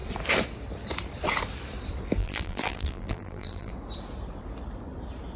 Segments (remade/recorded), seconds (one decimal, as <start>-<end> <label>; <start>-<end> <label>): 0.0-2.2 recorded; 2.2-3.7 remade; 3.7-5.4 recorded